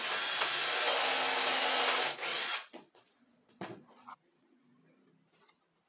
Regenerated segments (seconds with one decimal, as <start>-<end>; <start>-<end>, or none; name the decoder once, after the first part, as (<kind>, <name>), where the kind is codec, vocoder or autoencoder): 2.3-4.8 (vocoder, Vocos)